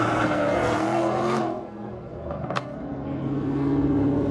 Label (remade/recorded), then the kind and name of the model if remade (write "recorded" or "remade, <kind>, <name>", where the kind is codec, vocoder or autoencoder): remade, codec, SNAC